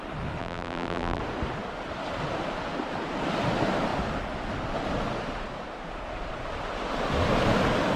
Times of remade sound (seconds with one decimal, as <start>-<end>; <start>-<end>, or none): 0.4-1.2